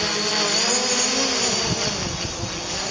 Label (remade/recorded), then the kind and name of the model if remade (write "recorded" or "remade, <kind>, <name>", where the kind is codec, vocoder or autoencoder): recorded